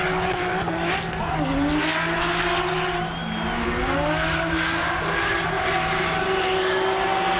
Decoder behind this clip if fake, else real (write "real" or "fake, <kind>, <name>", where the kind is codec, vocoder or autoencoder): real